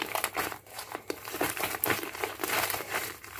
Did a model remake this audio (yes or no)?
yes